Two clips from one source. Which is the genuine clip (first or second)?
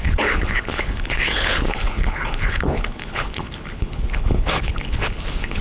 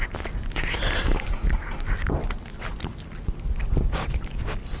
second